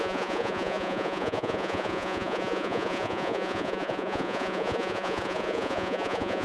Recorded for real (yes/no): no